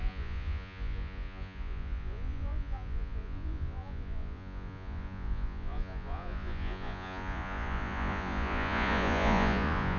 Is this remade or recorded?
remade